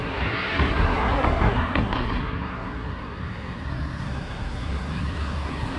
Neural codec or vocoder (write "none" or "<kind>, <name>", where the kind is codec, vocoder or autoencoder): codec, SNAC